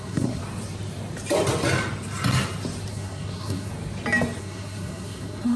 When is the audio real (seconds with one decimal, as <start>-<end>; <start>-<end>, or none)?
0.4-2.9; 3.7-4.4